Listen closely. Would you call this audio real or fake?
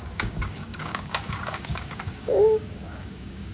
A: fake